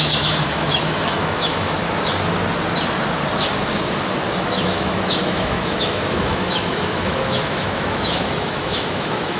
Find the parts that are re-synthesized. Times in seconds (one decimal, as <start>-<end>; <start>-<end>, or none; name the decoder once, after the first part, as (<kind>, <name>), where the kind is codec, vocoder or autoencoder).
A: 0.0-1.8 (autoencoder, DAC-VAE); 4.3-9.4